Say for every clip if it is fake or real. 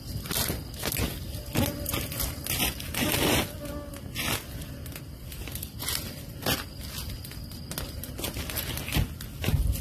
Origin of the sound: real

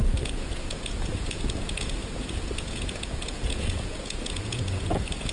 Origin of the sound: fake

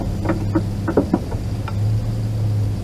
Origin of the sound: real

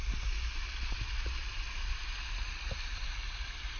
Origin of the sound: real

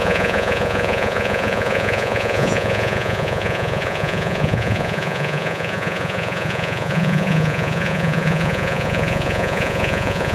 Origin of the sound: fake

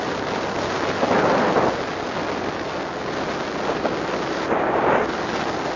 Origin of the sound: real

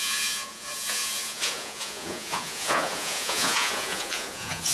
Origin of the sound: fake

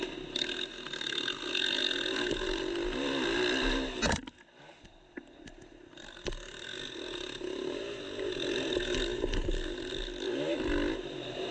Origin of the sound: real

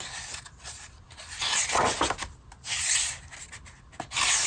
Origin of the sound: real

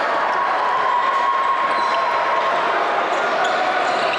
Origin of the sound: real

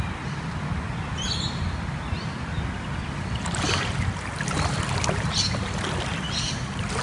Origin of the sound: real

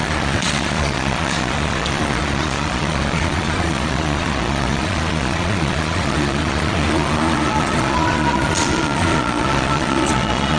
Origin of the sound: fake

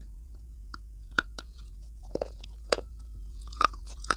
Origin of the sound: fake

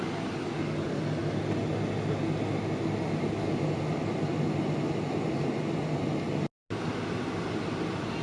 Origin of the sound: real